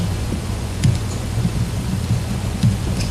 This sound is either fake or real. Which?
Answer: fake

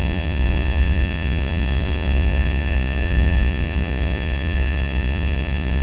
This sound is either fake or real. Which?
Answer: fake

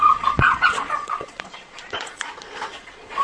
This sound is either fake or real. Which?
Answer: fake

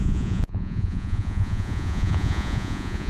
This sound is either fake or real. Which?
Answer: fake